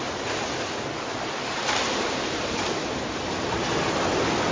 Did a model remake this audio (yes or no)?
yes